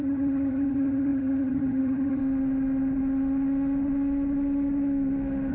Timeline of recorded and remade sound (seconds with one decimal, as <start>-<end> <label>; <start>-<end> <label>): 0.0-2.2 remade; 2.2-5.5 recorded